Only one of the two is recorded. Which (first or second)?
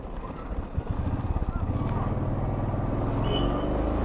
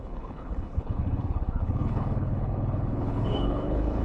first